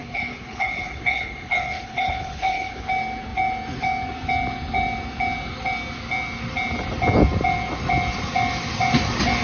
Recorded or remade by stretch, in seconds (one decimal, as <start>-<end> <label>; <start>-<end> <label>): 0.0-2.9 remade; 2.9-9.4 recorded